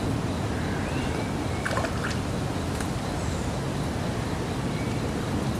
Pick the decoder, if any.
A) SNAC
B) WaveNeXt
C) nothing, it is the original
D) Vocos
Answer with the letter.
C